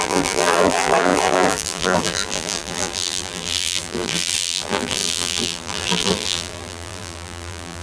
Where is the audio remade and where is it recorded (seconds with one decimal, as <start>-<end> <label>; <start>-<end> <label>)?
0.0-7.8 remade